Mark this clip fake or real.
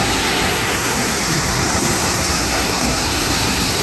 fake